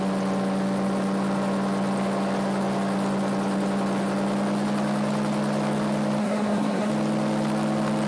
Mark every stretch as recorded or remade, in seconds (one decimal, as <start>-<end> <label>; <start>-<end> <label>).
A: 0.0-6.2 recorded; 6.2-6.9 remade; 6.9-8.1 recorded